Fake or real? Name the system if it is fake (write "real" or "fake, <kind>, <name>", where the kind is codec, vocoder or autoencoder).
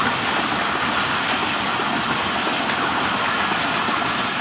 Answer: real